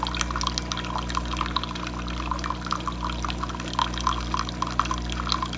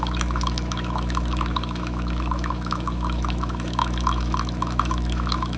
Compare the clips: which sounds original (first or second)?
first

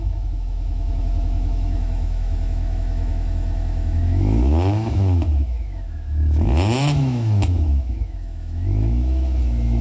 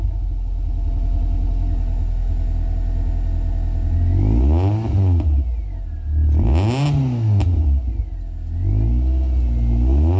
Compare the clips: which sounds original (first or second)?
second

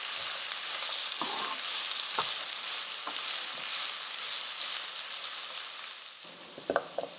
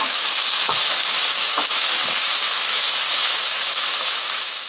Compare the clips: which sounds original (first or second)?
first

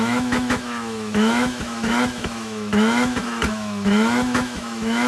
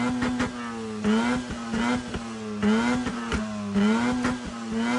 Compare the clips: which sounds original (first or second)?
second